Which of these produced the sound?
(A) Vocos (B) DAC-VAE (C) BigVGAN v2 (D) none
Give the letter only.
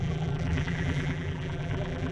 C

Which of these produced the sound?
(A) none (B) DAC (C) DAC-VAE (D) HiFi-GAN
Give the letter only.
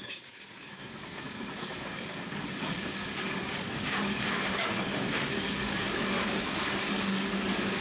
B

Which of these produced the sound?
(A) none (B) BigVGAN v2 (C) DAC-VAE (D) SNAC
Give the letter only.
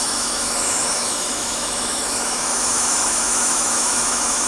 C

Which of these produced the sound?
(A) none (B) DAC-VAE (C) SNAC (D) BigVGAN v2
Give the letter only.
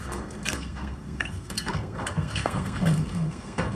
C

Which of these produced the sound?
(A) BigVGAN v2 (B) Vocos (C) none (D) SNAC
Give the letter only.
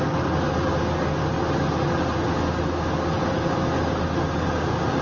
C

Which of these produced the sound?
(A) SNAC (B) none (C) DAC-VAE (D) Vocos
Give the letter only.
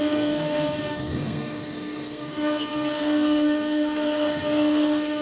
A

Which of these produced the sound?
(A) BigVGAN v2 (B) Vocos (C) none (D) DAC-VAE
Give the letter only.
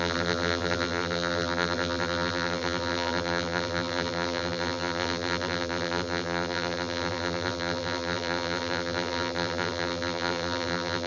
A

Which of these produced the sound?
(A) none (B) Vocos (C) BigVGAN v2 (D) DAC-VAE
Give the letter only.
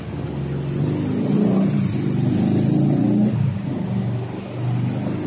A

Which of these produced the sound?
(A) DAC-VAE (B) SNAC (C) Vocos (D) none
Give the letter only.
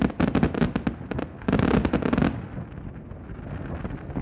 D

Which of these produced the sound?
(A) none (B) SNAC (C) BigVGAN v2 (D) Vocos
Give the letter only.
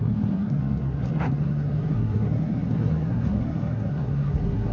B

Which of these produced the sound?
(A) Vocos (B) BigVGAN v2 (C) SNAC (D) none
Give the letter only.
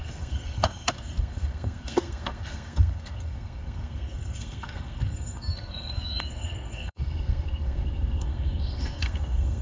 C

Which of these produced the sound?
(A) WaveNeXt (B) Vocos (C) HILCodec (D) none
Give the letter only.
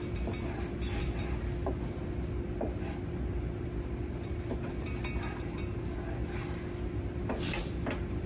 D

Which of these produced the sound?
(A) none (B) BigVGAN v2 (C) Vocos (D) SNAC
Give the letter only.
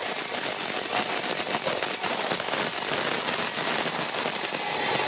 A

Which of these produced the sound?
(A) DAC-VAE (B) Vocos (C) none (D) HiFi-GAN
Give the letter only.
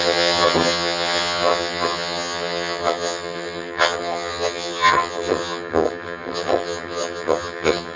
D